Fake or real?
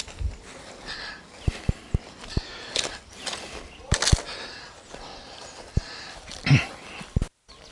real